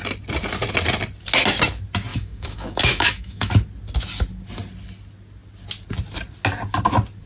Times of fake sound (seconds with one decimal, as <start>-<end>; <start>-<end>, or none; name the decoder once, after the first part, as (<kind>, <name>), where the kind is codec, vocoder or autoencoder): 2.1-3.5 (autoencoder, DAC-VAE)